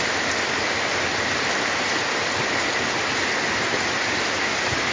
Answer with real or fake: real